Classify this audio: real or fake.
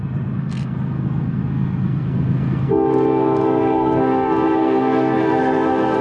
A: fake